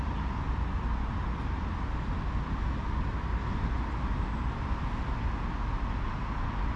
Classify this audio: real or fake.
real